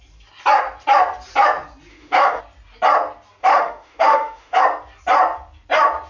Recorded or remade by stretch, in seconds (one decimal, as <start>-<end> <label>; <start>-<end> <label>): 0.0-1.9 recorded; 1.9-2.4 remade; 2.4-3.4 recorded; 3.4-4.6 remade; 4.6-6.1 recorded